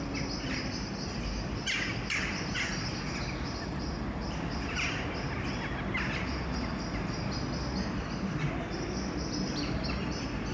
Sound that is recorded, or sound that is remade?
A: recorded